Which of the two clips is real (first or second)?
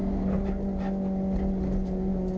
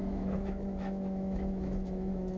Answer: first